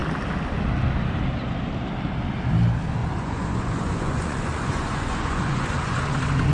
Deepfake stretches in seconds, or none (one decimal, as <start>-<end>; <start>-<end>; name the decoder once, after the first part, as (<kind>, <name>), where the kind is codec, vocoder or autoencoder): 3.0-6.5 (vocoder, Vocos)